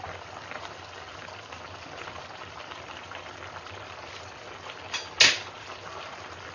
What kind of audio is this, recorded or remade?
recorded